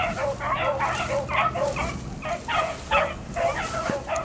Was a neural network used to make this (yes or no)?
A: no